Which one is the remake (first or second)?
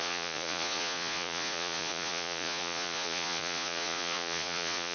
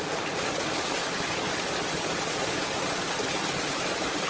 first